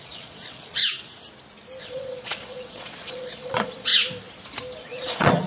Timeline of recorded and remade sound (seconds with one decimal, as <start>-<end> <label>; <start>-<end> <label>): 0.0-0.8 remade; 0.8-1.8 recorded; 1.8-3.9 remade; 3.9-4.8 recorded; 4.8-5.5 remade